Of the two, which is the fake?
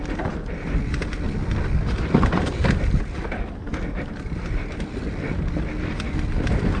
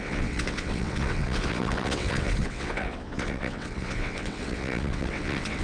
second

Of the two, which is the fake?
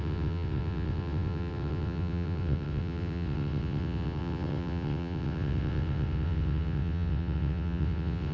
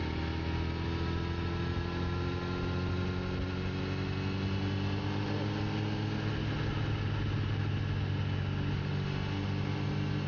first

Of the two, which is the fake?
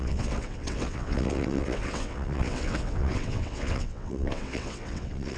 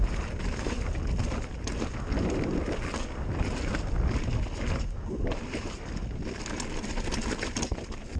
first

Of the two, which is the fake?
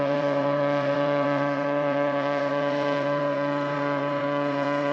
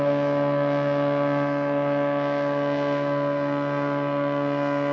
first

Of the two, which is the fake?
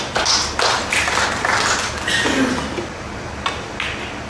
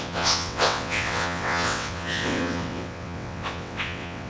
second